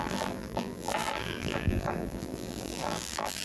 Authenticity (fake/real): fake